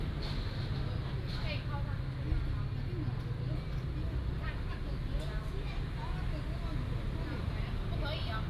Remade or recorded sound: recorded